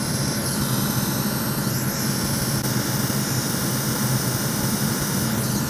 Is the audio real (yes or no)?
yes